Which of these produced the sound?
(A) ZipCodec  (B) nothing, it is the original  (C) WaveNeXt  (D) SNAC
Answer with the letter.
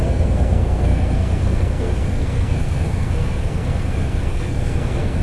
D